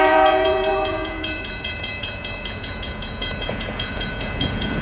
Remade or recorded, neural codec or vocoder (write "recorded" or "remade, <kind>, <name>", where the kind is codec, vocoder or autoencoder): remade, vocoder, Vocos